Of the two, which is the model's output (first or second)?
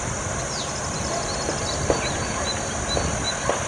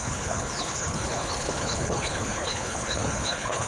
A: second